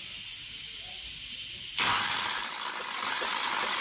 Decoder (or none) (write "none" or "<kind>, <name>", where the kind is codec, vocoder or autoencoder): none